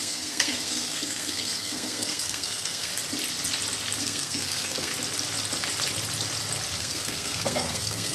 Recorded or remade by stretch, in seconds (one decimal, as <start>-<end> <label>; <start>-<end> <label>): 0.0-2.9 remade; 2.9-4.0 recorded; 4.0-4.9 remade; 4.9-6.8 recorded; 6.8-8.1 remade